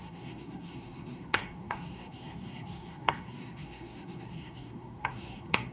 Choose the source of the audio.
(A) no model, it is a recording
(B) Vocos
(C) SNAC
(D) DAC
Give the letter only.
C